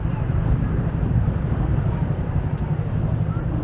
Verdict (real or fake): real